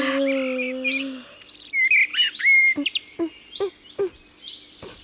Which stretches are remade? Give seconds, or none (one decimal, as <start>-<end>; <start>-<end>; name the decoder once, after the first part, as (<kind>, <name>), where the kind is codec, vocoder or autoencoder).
none